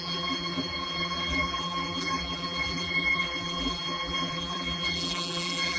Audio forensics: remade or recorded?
remade